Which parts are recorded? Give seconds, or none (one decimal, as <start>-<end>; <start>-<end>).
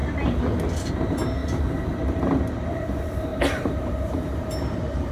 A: 0.0-1.4; 2.4-3.3